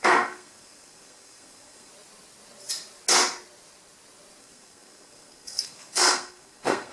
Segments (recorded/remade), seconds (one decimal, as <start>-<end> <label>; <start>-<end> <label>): 0.0-1.9 remade; 1.9-4.4 recorded; 4.4-6.9 remade